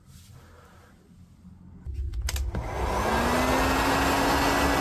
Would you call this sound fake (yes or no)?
no